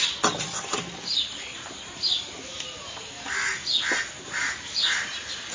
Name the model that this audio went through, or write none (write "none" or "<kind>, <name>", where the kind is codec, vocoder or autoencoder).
none